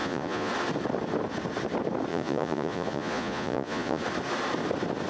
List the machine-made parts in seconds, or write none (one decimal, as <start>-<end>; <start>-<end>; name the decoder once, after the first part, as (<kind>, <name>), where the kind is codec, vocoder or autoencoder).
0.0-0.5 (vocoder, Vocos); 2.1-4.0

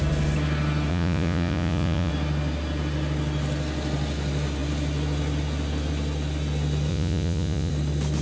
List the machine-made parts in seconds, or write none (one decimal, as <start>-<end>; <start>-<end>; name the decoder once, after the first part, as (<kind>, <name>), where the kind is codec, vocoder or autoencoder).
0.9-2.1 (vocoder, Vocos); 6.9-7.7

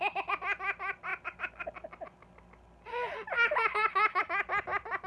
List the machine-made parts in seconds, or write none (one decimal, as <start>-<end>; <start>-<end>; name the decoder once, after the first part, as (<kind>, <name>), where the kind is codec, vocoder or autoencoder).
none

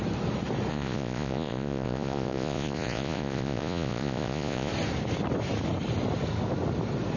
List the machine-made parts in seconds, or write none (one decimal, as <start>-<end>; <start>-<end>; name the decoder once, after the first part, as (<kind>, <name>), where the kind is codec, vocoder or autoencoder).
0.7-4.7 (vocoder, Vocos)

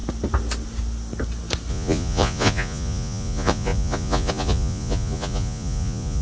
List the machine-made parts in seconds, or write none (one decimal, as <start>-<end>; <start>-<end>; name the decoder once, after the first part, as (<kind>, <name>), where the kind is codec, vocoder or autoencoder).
1.7-6.2 (vocoder, Vocos)

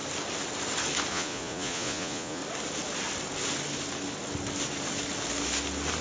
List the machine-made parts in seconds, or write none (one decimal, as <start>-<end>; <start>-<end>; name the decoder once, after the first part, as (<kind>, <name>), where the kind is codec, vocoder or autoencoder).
1.1-2.4 (vocoder, Vocos)

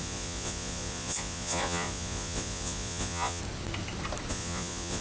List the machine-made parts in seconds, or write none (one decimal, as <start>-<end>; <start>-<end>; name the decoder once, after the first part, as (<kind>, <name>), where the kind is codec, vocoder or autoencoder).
0.0-3.4 (vocoder, Vocos); 4.3-5.0

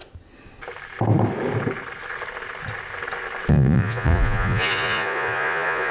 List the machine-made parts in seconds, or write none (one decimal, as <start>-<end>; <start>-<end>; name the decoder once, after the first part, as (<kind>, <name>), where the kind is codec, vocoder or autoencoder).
3.5-5.9 (vocoder, Vocos)